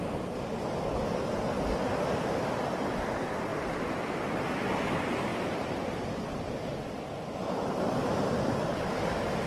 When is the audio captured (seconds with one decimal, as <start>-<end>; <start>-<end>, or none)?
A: 0.0-3.5; 4.3-8.0; 8.7-9.5